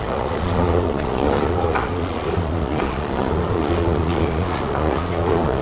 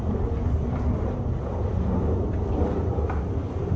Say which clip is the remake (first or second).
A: first